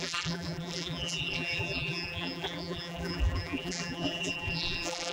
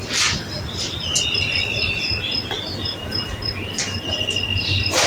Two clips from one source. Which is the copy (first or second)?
first